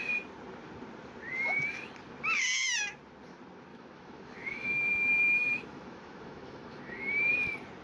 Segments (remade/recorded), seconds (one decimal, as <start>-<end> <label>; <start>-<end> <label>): 0.0-3.7 recorded; 3.7-7.1 remade; 7.1-7.8 recorded